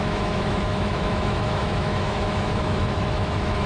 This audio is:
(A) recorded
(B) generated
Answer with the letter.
B